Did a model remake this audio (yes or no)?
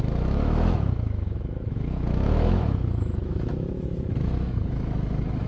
yes